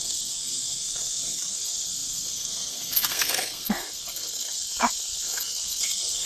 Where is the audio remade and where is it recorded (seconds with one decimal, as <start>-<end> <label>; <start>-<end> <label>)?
0.0-6.3 remade